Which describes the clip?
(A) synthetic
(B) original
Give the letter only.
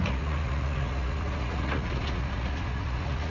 A